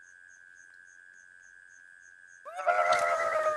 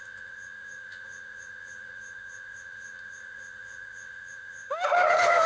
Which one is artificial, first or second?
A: second